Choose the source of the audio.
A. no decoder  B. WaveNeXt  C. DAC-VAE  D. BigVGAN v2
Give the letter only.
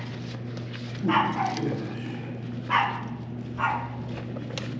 A